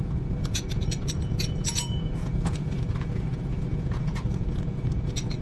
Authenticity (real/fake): fake